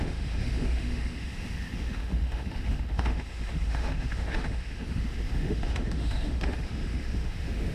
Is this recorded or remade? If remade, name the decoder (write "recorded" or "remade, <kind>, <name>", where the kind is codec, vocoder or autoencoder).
remade, autoencoder, DAC-VAE